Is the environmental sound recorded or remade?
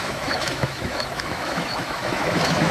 remade